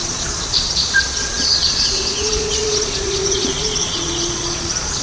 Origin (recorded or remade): remade